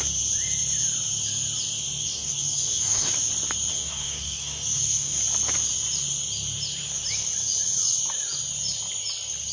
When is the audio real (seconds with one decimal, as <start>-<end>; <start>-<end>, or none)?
0.0-2.0; 3.1-3.7; 5.2-9.5

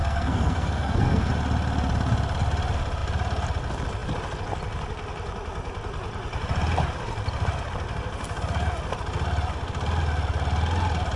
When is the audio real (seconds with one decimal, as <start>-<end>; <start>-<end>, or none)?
1.3-11.2

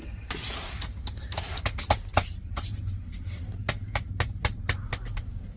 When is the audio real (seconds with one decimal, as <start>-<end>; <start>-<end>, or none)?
none

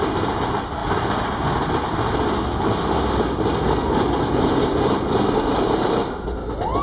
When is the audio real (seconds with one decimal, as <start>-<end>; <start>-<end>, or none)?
0.0-6.8

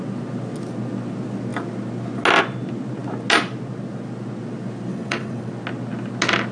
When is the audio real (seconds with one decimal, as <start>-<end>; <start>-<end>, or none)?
0.0-4.9; 5.5-6.5